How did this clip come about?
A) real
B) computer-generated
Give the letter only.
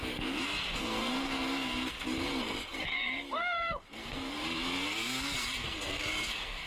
B